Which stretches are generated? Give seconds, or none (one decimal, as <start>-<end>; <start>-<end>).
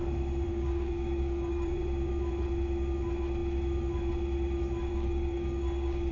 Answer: 0.5-1.8; 4.9-6.1